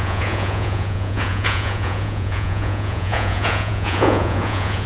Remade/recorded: remade